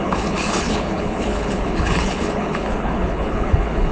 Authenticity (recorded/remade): remade